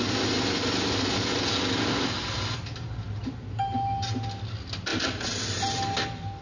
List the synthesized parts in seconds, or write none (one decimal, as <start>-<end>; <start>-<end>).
none